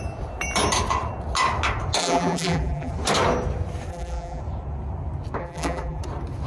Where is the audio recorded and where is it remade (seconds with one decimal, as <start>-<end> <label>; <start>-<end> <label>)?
0.0-2.0 recorded; 2.0-2.9 remade; 2.9-3.9 recorded; 3.9-4.4 remade; 4.4-5.4 recorded; 5.4-6.0 remade; 6.0-6.5 recorded